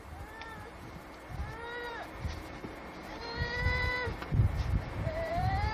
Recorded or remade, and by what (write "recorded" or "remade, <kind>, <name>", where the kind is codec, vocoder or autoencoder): remade, vocoder, BigVGAN v2